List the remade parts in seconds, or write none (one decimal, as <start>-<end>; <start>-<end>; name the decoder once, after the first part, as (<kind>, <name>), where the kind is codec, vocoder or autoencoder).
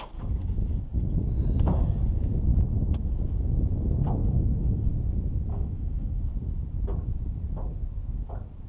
4.2-4.9 (codec, SNAC); 5.5-6.2